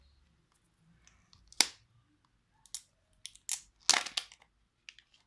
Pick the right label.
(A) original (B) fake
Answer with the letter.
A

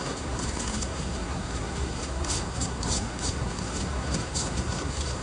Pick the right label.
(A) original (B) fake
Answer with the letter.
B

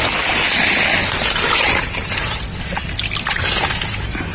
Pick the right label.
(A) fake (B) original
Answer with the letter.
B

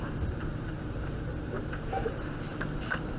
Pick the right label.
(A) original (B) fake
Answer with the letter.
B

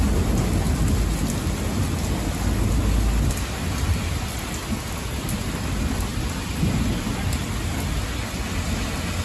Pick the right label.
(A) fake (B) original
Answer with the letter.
B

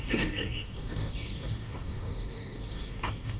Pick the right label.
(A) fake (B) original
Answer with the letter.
A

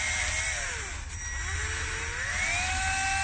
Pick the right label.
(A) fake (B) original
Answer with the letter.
B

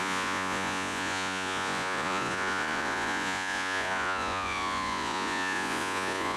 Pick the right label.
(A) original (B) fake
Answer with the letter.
B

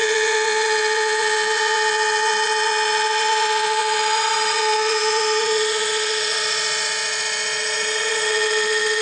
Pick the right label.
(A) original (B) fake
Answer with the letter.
B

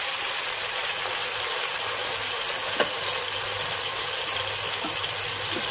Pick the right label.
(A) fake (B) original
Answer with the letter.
B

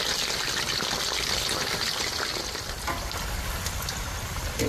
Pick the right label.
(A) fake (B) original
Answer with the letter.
B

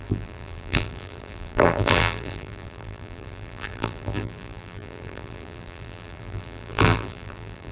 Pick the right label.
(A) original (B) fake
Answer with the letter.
B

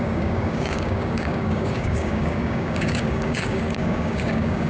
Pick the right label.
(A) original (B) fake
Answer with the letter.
B